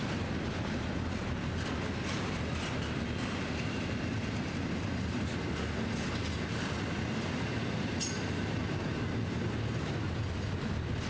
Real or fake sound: real